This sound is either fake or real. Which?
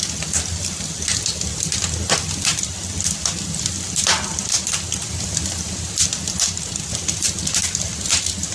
real